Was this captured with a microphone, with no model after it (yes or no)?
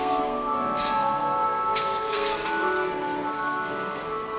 no